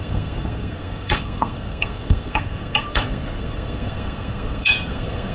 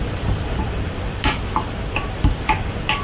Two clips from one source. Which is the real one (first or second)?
second